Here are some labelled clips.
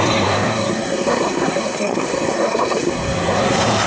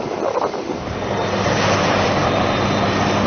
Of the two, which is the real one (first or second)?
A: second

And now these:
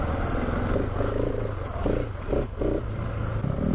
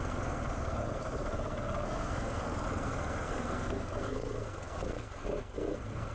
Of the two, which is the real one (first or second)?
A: first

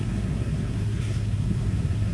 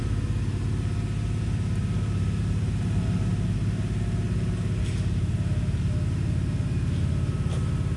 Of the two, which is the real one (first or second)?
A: second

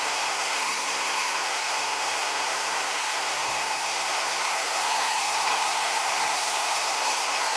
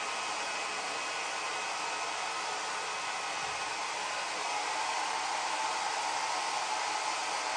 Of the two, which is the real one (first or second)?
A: second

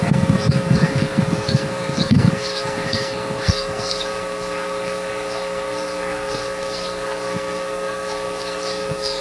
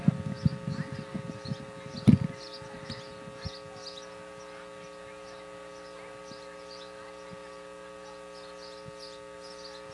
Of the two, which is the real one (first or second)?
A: second